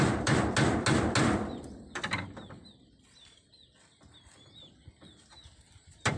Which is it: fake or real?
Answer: real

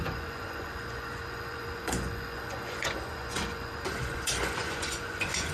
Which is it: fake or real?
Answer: fake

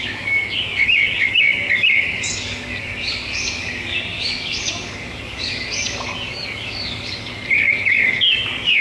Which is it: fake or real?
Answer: fake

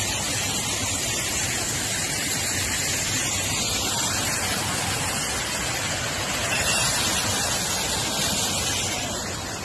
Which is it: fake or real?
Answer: real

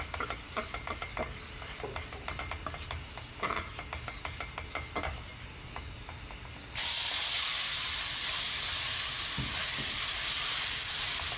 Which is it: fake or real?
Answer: real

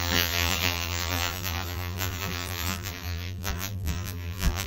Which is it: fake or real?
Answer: fake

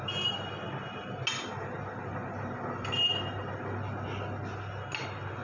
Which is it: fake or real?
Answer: real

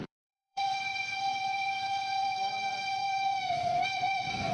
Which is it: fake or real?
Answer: fake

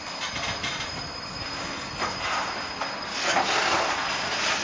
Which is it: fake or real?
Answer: real